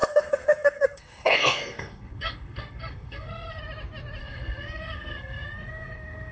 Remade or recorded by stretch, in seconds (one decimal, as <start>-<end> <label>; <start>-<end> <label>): 0.0-3.6 remade; 3.6-4.2 recorded; 4.2-6.3 remade